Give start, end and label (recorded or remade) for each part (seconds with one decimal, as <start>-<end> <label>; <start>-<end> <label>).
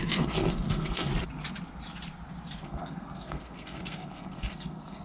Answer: 0.0-1.1 remade; 1.1-2.6 recorded; 2.6-5.0 remade